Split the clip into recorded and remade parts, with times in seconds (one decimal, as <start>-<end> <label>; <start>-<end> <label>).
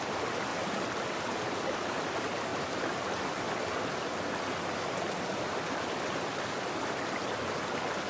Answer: 0.0-8.1 recorded